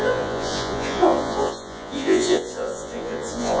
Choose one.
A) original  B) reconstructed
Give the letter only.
B